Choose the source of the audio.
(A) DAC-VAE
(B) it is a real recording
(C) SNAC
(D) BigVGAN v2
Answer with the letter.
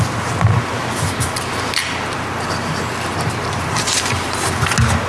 B